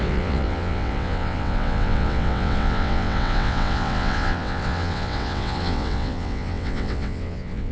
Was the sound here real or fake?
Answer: fake